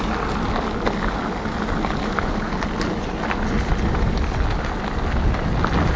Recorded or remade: recorded